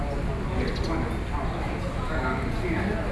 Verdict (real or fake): real